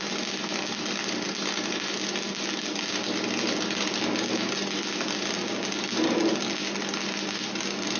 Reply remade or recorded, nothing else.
recorded